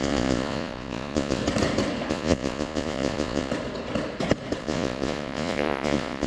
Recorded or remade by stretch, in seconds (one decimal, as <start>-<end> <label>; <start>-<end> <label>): 0.0-1.4 remade; 1.4-2.1 recorded; 2.1-3.5 remade; 3.5-4.6 recorded; 4.6-6.3 remade